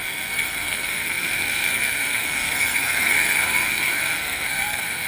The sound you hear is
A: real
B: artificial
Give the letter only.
B